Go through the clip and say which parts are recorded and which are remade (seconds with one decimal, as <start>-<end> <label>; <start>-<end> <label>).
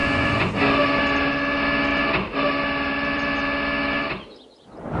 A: 0.0-0.5 remade; 0.5-5.0 recorded